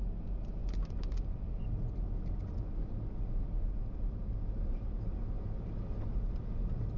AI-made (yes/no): no